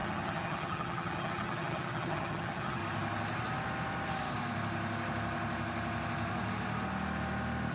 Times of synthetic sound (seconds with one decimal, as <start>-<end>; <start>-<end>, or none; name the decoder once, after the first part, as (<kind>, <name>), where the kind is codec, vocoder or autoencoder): 0.0-2.8 (vocoder, HiFi-GAN)